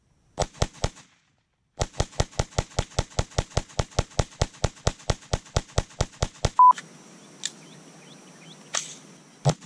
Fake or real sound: real